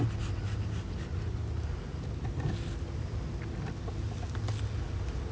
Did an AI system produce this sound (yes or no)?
no